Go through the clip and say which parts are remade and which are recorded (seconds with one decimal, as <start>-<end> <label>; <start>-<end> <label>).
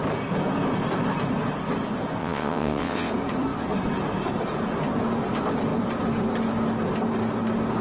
0.0-2.2 recorded; 2.2-3.1 remade; 3.1-7.8 recorded